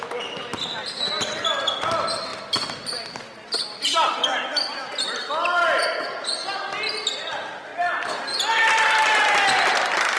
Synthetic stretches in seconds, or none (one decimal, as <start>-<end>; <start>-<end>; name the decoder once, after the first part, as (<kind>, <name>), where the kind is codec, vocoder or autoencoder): none